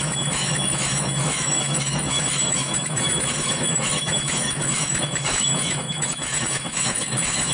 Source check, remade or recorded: remade